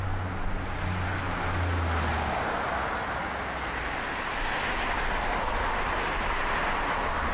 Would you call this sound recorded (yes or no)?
yes